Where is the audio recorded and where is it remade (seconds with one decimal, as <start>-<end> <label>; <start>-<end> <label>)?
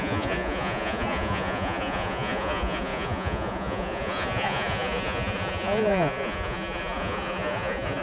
0.0-8.0 remade